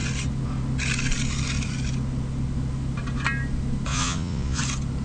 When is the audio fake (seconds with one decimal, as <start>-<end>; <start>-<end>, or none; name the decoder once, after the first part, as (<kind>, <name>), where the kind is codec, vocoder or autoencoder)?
3.9-4.6 (vocoder, Vocos)